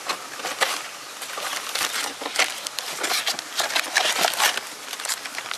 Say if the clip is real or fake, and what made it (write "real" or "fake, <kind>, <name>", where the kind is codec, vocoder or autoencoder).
real